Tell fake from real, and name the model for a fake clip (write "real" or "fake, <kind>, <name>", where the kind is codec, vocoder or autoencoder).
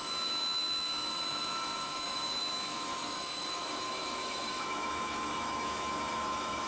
fake, autoencoder, DAC-VAE